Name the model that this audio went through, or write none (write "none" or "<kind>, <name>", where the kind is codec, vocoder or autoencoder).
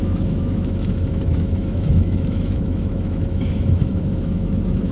autoencoder, DAC-VAE